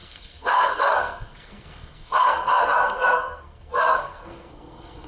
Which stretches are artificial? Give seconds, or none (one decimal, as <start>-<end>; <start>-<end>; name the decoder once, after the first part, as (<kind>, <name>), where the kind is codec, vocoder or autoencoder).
0.0-5.1 (codec, SNAC)